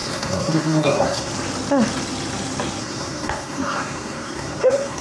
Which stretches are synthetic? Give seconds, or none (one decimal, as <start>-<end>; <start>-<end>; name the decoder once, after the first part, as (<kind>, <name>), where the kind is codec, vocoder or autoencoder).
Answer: 0.0-1.3 (codec, SNAC); 2.8-5.0

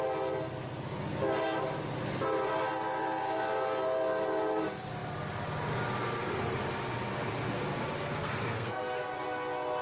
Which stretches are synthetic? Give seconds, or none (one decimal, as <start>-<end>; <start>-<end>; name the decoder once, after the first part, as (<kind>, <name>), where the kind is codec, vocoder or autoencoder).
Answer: 8.2-9.0 (codec, SNAC)

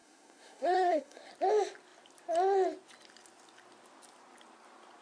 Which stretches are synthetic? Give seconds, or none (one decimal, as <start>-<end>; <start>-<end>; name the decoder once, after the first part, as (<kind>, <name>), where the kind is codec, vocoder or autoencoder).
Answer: 0.0-1.3 (codec, SNAC)

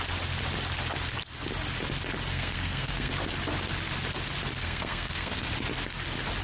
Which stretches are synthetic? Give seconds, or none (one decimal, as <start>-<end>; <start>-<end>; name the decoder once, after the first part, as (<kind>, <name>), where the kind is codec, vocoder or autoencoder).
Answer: 2.3-3.1 (codec, SNAC); 4.6-5.5

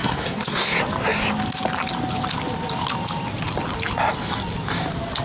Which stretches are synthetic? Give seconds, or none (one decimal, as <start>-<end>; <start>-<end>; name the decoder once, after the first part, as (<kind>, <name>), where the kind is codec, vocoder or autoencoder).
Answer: 0.0-0.7 (codec, SNAC)